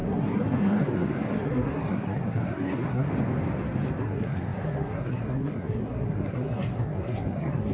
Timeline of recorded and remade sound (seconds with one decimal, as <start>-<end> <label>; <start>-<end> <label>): 0.0-3.1 remade; 3.1-4.0 recorded; 4.0-7.7 remade